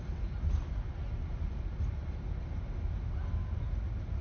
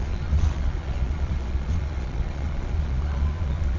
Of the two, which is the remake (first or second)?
second